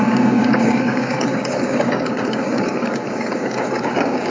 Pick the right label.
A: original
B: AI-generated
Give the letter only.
B